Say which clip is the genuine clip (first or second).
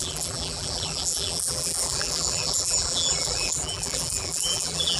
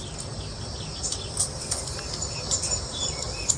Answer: second